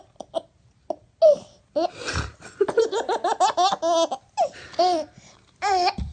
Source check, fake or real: real